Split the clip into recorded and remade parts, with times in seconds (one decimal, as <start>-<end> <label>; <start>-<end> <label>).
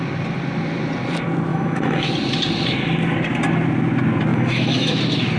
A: 0.0-1.5 recorded; 1.5-2.1 remade; 2.1-4.3 recorded; 4.3-5.0 remade; 5.0-5.4 recorded